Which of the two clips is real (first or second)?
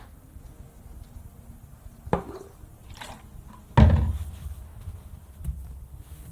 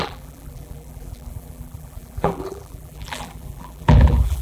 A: first